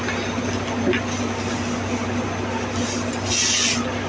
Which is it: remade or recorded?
recorded